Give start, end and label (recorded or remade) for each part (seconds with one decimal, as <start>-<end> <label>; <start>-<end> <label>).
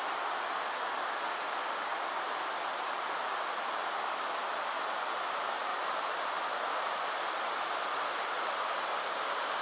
0.0-1.9 recorded; 1.9-3.0 remade; 3.0-5.7 recorded; 5.7-6.6 remade; 6.6-9.6 recorded